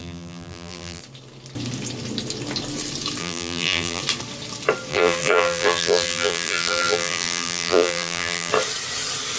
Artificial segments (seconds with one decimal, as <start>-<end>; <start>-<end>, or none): 0.0-1.0; 3.2-4.0; 4.9-8.5